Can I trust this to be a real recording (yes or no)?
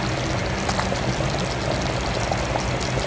yes